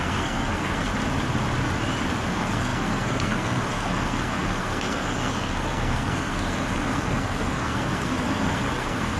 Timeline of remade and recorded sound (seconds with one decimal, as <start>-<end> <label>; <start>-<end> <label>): 0.0-0.9 remade; 0.9-2.3 recorded; 2.3-9.2 remade